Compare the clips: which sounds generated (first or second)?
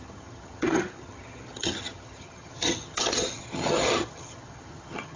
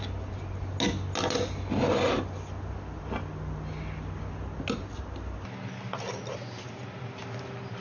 first